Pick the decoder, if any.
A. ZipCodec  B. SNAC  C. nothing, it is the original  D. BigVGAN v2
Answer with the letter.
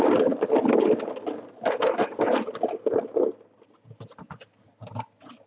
C